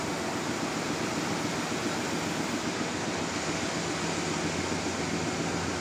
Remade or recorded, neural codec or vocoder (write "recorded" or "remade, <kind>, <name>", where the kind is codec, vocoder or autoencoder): recorded